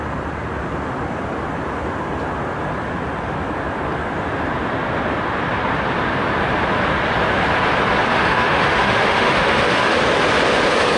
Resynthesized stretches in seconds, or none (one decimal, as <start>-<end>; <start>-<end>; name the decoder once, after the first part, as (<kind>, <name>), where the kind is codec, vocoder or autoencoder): 8.1-10.0 (autoencoder, DAC-VAE)